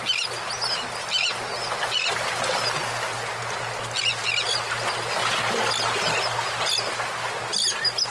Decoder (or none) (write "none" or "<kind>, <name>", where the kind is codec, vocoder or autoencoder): none